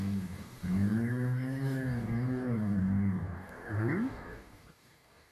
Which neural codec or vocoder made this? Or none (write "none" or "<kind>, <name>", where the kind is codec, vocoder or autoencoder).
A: codec, DAC